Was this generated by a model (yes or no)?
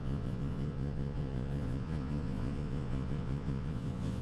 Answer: yes